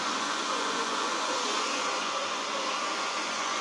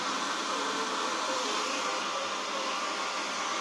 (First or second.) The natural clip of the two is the second